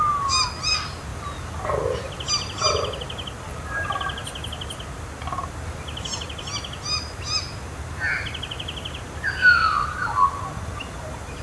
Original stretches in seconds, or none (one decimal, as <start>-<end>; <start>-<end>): 0.0-11.4